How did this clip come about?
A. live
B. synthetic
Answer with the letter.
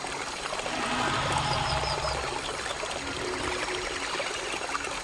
A